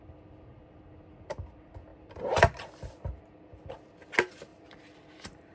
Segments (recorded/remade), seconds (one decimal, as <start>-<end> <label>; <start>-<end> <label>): 0.0-1.9 recorded; 1.9-3.2 remade; 3.2-4.5 recorded; 4.5-5.5 remade